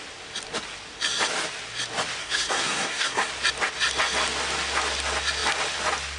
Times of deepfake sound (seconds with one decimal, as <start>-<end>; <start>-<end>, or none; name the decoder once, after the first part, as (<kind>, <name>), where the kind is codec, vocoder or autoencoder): 2.2-3.3 (codec, SNAC)